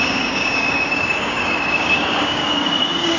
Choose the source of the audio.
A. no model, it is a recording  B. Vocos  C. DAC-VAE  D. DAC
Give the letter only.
D